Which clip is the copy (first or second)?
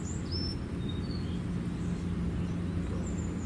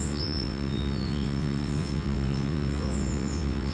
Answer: second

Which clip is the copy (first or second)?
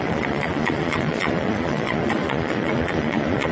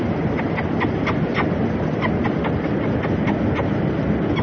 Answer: first